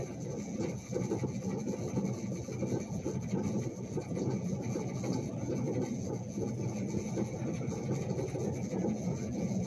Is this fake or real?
real